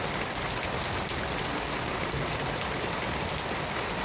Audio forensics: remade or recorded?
recorded